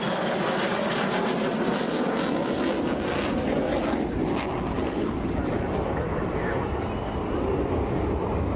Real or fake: real